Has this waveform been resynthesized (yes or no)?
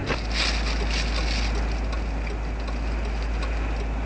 no